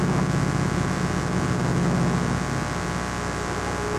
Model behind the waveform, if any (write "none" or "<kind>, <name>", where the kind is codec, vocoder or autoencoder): none